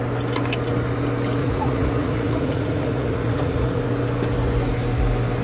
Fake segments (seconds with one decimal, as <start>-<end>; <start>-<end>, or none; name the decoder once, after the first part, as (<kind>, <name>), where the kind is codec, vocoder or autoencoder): 1.4-3.8 (vocoder, Vocos)